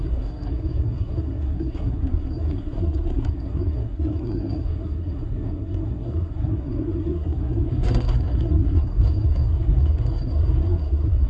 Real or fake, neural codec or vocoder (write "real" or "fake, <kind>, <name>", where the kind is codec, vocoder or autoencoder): fake, codec, SNAC